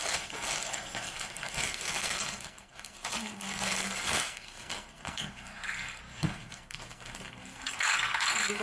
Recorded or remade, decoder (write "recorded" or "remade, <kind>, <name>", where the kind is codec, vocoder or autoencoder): remade, codec, SNAC